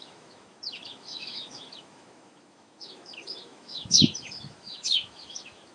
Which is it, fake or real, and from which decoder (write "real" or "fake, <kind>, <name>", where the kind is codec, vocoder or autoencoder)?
fake, autoencoder, DAC-VAE